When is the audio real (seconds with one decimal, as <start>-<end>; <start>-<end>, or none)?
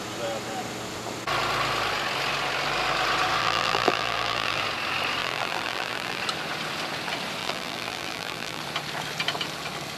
0.0-3.4; 4.6-5.2; 6.2-7.4; 8.6-10.0